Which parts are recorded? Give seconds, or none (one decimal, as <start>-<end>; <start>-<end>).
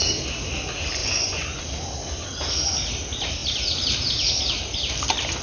0.0-1.0; 1.6-5.4